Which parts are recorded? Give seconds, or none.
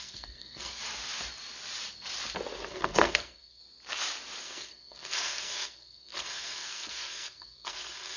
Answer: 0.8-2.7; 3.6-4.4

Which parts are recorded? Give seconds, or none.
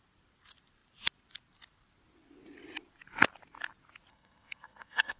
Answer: 0.0-4.1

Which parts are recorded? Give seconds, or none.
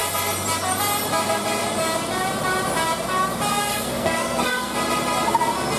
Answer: 0.0-3.5; 4.7-5.8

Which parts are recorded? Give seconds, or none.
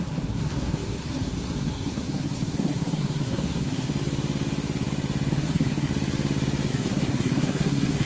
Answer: 3.9-5.3; 5.9-6.7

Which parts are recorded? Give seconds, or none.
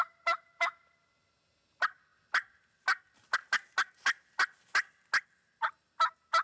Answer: 0.0-6.4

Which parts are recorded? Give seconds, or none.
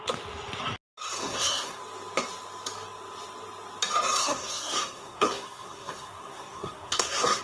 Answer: 0.0-1.2; 1.8-4.2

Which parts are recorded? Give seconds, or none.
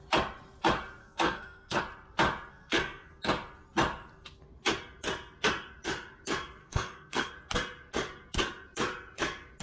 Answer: 0.0-1.0; 1.8-2.5; 3.1-6.6; 7.3-9.6